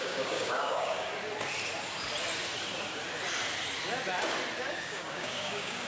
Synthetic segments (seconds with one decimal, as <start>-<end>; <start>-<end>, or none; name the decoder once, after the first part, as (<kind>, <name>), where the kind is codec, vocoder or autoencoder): 0.0-1.1 (codec, DAC); 4.6-5.9